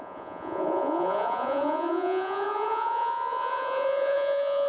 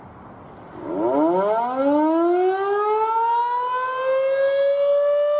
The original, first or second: second